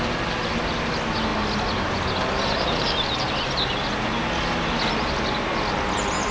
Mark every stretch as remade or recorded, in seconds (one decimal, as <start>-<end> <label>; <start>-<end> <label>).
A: 0.0-6.3 recorded